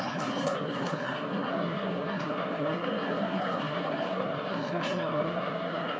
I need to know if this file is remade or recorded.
remade